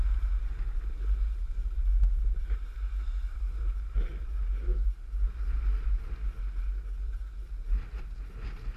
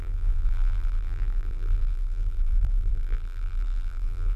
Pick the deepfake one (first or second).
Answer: second